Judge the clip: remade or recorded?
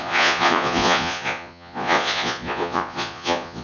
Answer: remade